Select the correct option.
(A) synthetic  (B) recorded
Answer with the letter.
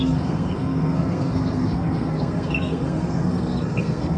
A